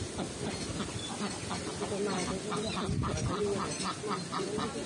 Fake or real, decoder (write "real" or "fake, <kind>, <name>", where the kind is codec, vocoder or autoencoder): real